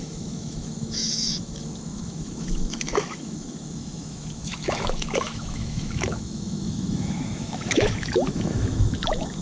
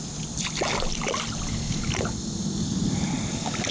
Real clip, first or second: second